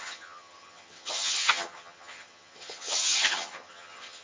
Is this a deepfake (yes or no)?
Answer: yes